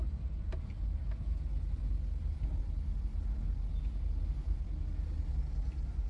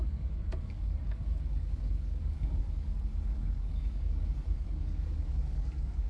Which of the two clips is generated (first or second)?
second